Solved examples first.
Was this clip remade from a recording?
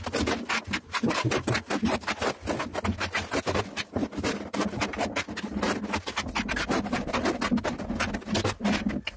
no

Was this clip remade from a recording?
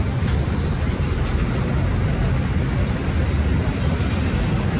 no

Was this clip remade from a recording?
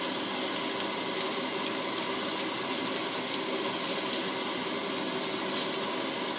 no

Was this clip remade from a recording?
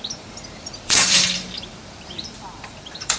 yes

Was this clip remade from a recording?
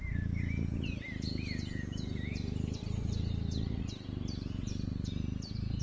no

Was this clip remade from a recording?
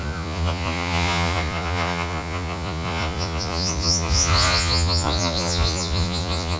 yes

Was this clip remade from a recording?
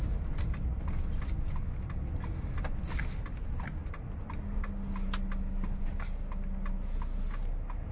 no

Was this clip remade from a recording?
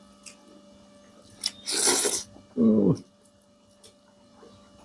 no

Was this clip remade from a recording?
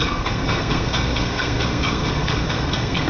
yes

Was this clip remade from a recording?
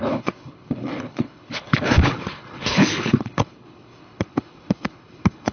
yes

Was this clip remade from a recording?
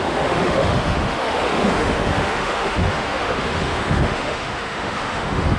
yes